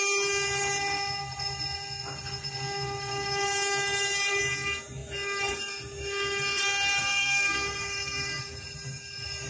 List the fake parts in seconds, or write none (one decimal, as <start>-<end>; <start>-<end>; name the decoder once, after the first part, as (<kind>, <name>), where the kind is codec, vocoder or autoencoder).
7.0-8.4 (codec, SNAC)

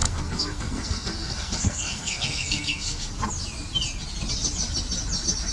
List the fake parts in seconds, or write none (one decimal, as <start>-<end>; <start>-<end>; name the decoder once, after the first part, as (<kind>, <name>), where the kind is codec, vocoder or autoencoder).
0.0-3.1 (codec, SNAC)

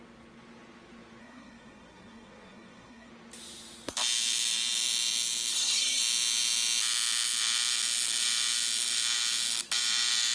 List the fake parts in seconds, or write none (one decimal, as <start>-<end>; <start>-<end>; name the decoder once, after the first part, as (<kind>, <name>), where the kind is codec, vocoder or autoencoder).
1.2-3.1 (codec, SNAC); 5.5-6.0

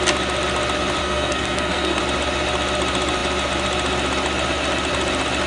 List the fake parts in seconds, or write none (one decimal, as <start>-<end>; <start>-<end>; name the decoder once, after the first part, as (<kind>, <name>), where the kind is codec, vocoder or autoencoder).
1.0-2.0 (codec, SNAC)

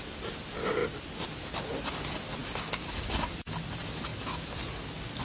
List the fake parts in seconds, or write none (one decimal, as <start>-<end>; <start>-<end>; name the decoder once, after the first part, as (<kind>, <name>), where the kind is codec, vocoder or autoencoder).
none